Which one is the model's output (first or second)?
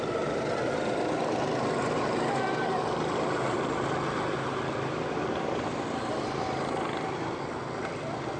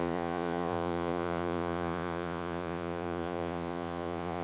second